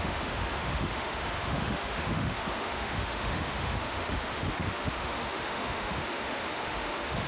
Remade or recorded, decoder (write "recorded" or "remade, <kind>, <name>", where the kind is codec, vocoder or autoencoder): remade, autoencoder, DAC-VAE